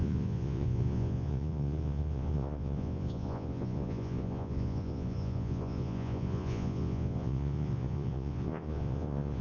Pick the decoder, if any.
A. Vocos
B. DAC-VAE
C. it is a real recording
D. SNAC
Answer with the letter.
A